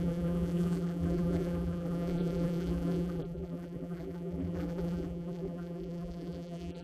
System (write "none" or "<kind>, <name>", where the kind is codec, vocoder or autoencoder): vocoder, BigVGAN v2